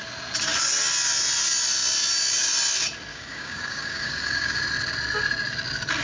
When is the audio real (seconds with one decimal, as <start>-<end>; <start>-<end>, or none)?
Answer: 0.0-3.1; 4.6-6.0